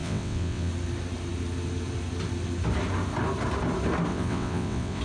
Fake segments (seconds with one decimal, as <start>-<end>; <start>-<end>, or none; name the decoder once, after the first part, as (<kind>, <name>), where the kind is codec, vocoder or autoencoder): 0.0-0.7 (vocoder, WaveNeXt); 4.1-5.0